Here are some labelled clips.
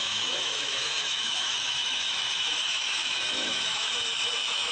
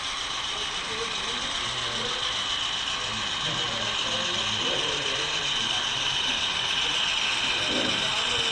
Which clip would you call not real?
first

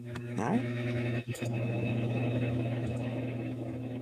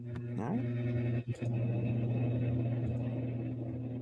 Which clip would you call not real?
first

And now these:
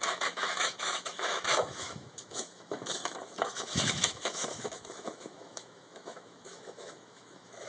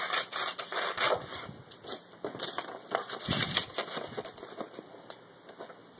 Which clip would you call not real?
first